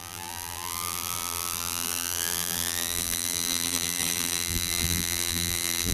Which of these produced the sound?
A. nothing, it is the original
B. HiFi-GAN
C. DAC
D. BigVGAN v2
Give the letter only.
D